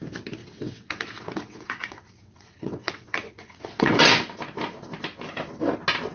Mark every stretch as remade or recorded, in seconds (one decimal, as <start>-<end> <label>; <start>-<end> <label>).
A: 0.0-0.4 recorded; 0.4-4.1 remade; 4.1-6.1 recorded